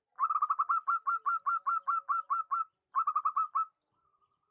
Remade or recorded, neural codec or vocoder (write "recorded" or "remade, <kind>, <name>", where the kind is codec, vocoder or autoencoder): recorded